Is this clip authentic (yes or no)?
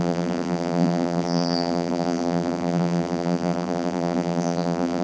no